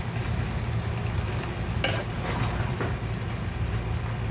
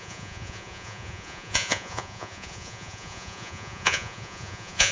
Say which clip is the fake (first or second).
second